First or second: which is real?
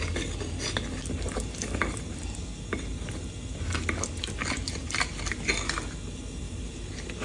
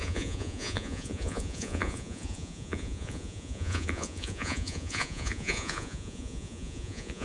first